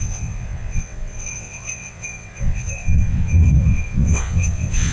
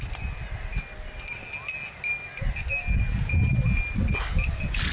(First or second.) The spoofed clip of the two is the first